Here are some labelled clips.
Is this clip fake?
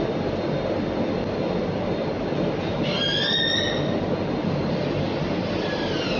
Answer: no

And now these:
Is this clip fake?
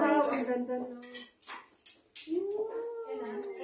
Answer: no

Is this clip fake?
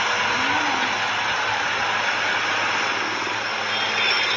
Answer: no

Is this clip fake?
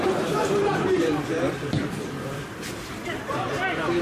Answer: yes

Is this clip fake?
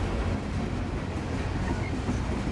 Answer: no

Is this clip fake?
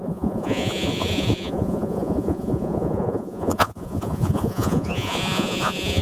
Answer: yes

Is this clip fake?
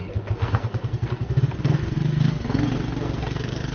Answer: yes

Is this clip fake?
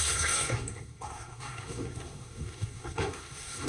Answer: yes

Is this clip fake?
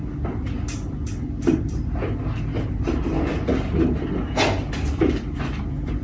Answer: no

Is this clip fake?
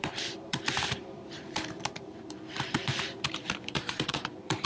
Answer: yes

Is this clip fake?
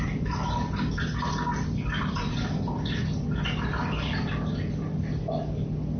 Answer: no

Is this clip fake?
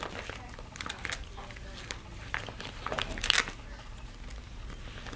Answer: no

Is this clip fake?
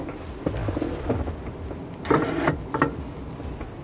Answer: no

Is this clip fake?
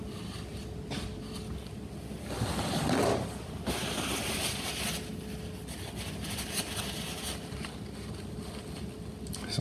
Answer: no